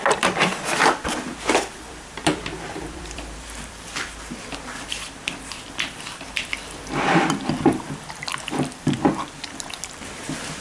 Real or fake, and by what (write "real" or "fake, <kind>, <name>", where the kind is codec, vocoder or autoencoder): fake, vocoder, BigVGAN v2